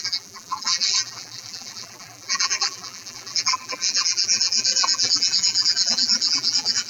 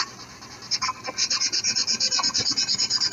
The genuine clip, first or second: second